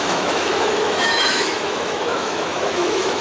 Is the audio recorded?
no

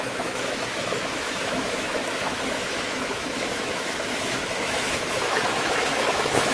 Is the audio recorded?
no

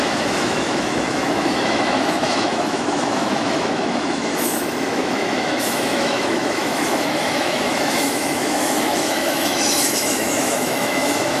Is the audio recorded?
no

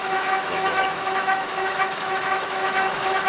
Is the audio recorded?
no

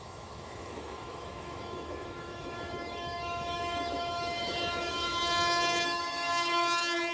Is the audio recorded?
no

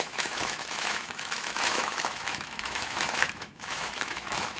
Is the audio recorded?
no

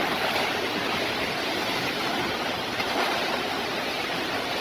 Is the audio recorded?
yes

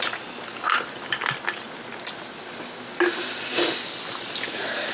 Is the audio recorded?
yes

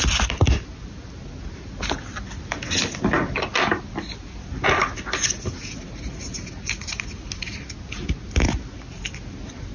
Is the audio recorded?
yes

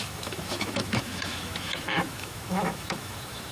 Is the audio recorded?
no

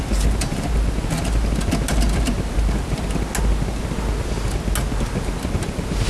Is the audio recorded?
yes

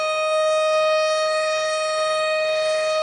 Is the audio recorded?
no